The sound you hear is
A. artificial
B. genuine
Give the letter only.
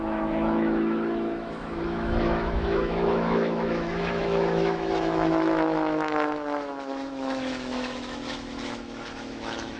A